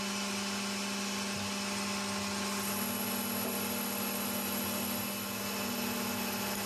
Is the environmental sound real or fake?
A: real